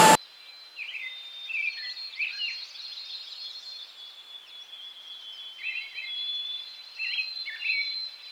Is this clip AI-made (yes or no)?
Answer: no